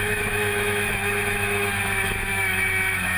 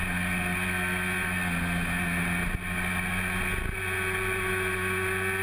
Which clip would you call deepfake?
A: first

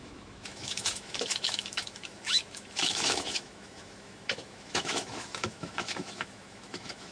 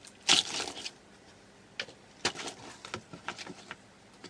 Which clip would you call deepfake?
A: first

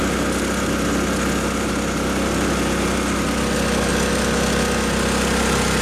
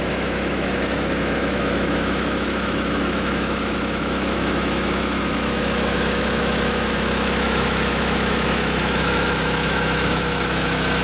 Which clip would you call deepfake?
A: second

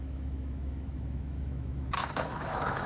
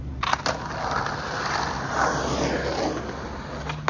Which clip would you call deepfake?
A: first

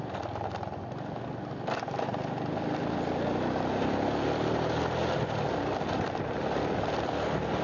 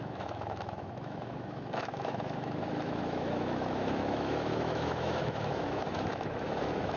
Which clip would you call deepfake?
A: second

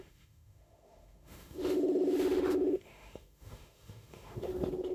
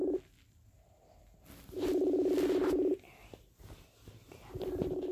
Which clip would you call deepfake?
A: first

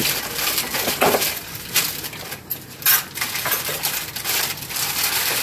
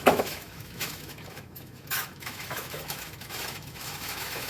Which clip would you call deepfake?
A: second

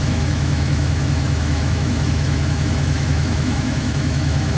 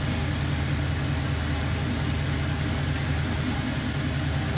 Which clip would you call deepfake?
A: first